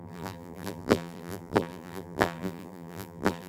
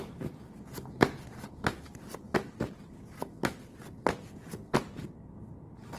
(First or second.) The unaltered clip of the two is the second